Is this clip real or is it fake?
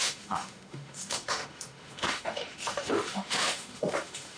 fake